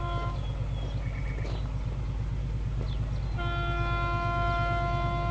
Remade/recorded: recorded